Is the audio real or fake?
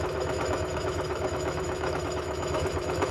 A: fake